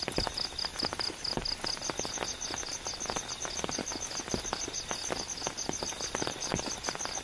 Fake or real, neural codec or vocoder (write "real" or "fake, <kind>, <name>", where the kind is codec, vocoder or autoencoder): real